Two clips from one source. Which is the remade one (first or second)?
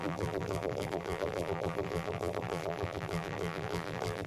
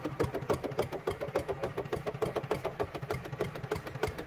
first